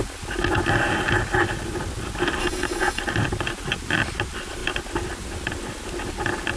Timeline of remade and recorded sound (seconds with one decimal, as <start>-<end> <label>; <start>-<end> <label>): 0.0-2.4 recorded; 2.4-3.0 remade; 3.0-6.6 recorded